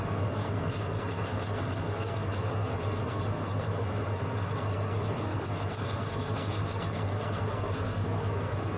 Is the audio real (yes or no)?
no